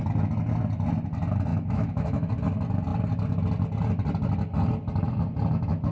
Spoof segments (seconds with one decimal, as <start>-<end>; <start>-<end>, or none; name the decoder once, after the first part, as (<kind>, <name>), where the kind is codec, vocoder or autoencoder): 1.5-2.3 (autoencoder, DAC-VAE)